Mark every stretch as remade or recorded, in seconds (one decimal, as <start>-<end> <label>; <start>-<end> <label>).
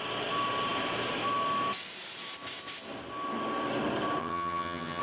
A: 0.0-4.2 recorded; 4.2-5.0 remade